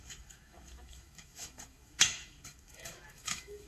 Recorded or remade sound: remade